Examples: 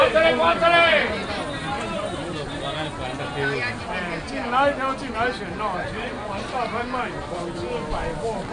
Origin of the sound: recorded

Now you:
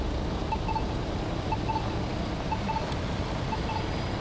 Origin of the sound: recorded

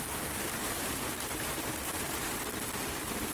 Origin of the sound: remade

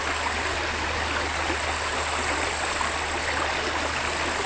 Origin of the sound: recorded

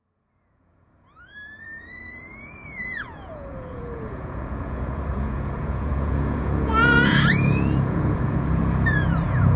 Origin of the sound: remade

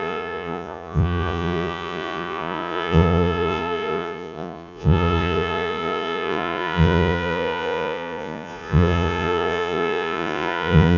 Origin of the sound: remade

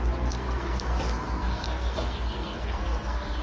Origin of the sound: remade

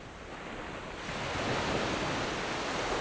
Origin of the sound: recorded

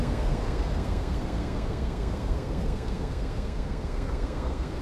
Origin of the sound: remade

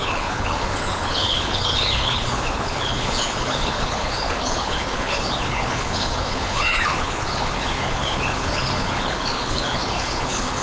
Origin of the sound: remade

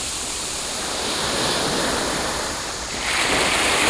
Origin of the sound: remade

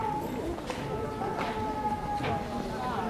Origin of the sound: recorded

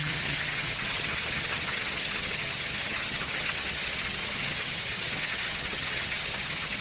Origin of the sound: remade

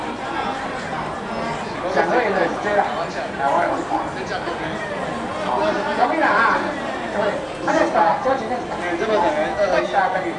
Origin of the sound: recorded